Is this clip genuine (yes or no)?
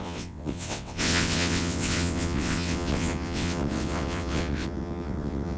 no